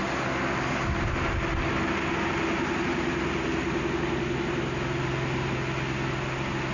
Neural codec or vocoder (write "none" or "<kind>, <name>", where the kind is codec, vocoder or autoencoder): none